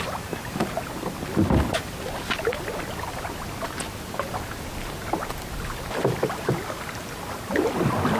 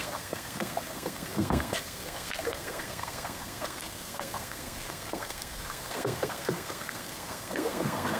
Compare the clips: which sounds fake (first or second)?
second